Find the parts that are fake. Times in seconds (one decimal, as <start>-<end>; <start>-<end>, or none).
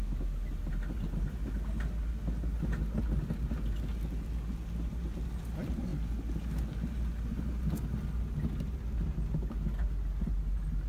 none